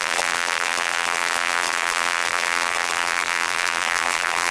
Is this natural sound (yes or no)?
no